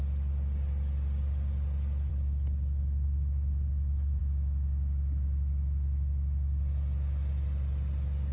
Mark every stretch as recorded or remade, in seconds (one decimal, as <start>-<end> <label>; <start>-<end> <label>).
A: 0.0-2.1 recorded; 2.1-4.2 remade; 4.2-8.3 recorded